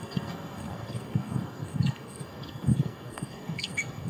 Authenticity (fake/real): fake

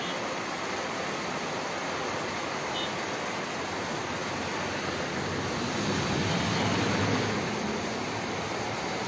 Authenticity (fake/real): real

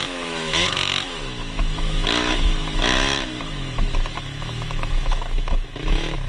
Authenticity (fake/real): fake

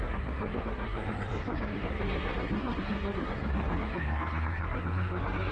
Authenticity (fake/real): fake